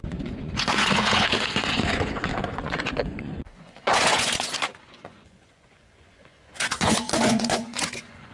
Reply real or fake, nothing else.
fake